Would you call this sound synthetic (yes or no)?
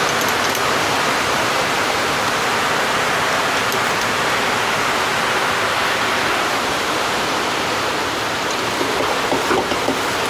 no